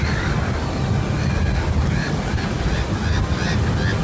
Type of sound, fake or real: real